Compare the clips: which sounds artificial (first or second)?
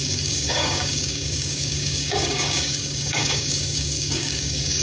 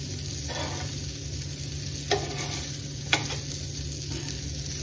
first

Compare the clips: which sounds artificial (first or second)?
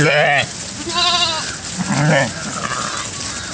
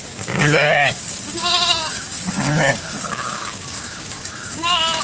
second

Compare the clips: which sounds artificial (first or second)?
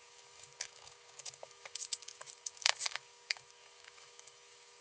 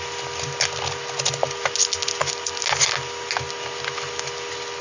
first